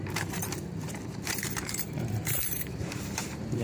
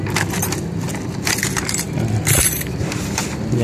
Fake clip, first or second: first